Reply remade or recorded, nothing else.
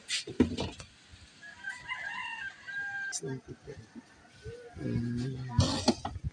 recorded